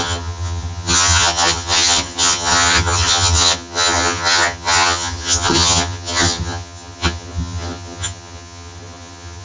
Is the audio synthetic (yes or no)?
yes